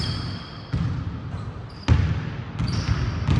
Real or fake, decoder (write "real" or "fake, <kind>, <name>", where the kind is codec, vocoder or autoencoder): real